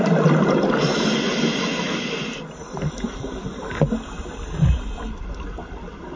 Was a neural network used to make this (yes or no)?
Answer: no